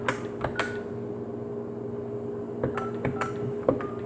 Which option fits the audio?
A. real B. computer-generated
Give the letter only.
A